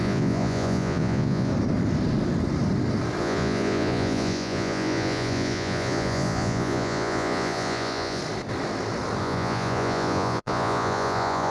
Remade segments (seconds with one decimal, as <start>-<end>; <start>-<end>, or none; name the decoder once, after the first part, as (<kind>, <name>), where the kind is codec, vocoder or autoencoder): 0.0-1.5 (vocoder, Vocos); 3.2-8.2; 9.2-11.5